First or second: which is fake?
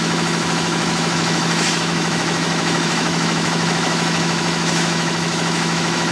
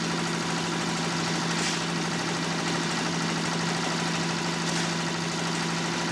first